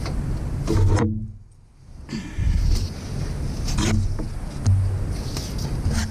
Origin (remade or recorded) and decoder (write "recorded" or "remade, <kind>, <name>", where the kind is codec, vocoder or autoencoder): recorded